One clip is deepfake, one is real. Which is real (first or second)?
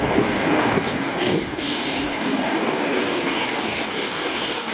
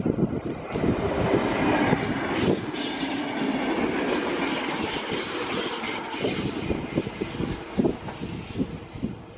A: second